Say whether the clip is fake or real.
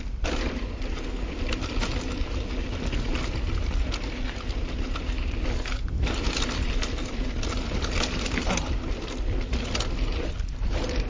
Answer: real